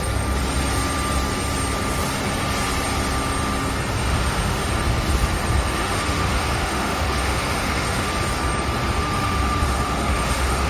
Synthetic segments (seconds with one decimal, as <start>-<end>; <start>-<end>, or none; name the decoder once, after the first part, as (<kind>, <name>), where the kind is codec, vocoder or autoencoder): 4.0-4.7 (autoencoder, DAC-VAE); 5.8-8.1; 9.0-10.7